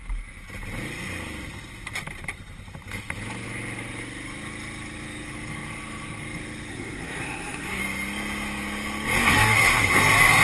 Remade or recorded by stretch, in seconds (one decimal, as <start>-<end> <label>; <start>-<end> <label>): 0.0-6.7 recorded; 6.7-7.8 remade; 7.8-9.2 recorded; 9.2-10.0 remade; 10.0-10.4 recorded